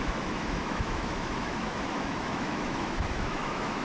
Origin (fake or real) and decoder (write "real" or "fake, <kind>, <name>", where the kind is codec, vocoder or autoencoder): fake, autoencoder, DAC-VAE